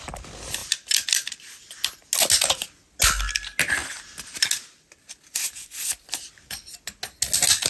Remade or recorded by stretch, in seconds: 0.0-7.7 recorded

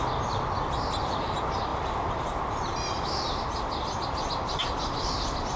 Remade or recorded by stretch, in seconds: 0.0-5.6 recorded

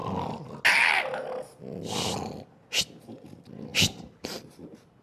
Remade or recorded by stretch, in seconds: 0.0-3.7 recorded; 3.7-4.5 remade; 4.5-5.0 recorded

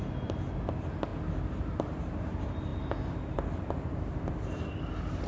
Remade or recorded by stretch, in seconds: 0.0-1.1 recorded; 1.1-2.2 remade; 2.2-5.3 recorded

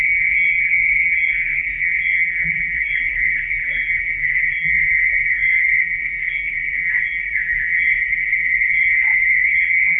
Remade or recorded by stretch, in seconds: 0.0-10.0 remade

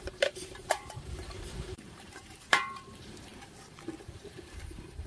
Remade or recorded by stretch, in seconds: 0.0-3.3 remade; 3.3-4.0 recorded; 4.0-5.1 remade